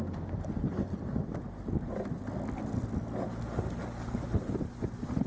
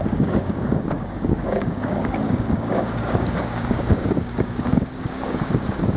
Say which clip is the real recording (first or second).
first